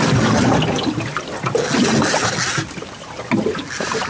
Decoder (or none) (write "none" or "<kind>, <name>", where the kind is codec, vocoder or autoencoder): none